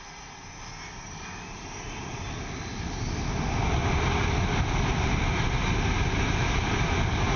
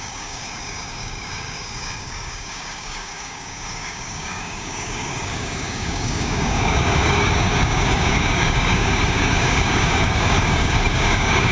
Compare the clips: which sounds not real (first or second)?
second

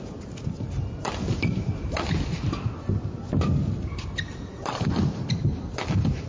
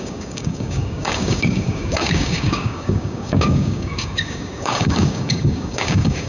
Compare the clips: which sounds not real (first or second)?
second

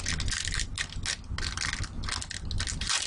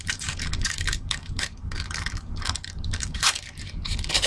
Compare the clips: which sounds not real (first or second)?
second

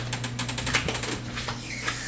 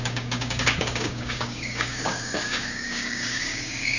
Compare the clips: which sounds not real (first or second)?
second